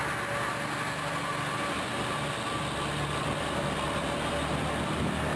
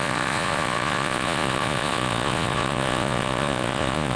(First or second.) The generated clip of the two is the second